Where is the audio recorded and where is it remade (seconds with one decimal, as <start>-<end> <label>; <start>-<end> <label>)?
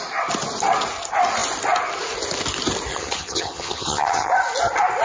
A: 0.0-2.9 recorded; 2.9-4.3 remade; 4.3-5.0 recorded